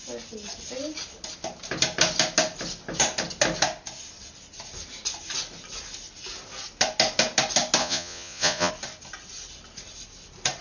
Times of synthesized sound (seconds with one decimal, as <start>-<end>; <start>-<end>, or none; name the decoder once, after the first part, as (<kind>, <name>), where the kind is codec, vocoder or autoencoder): 7.8-8.7 (vocoder, Vocos)